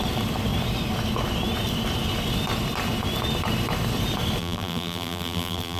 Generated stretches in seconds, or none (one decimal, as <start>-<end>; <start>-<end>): 4.4-5.8